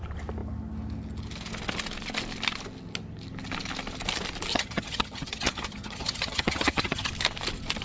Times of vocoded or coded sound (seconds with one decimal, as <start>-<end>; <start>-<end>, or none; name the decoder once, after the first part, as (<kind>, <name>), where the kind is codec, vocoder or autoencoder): 4.5-7.1 (vocoder, HiFi-GAN)